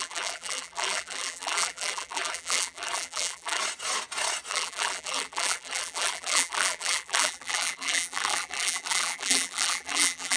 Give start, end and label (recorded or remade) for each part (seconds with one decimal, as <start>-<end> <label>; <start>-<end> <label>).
0.0-3.6 remade; 3.6-4.5 recorded; 4.5-10.4 remade